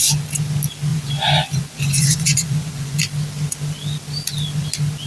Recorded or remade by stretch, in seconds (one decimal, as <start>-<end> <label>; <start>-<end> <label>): 0.0-0.9 recorded; 0.9-3.0 remade; 3.0-5.1 recorded